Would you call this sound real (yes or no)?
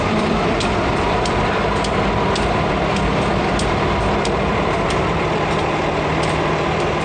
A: no